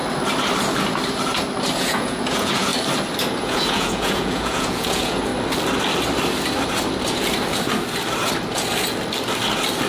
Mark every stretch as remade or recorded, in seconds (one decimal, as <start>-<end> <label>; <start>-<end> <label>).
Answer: 0.0-1.8 recorded; 1.8-2.7 remade; 2.7-3.4 recorded; 3.4-5.3 remade; 5.3-9.9 recorded